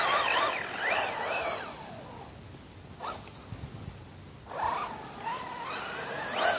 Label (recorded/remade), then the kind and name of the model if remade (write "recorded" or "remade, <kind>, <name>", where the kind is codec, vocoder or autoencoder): recorded